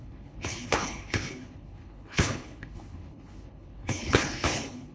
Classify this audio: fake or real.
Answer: fake